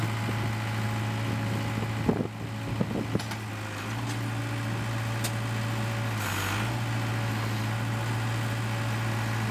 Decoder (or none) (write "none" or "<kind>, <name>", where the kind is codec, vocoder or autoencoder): none